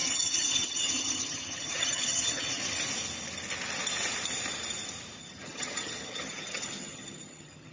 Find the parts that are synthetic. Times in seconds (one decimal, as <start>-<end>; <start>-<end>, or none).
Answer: 0.0-2.6; 5.2-7.7